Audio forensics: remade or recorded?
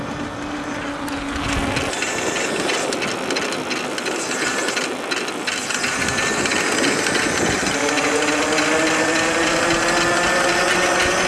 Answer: recorded